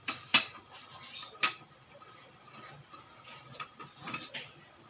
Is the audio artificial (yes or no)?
no